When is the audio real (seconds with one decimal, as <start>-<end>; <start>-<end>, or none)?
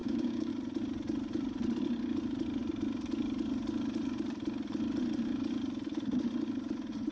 0.5-7.1